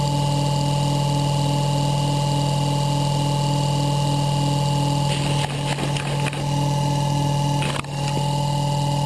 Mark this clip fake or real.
real